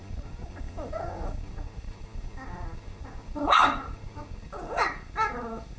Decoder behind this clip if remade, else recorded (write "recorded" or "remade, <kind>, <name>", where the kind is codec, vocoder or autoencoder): remade, codec, DAC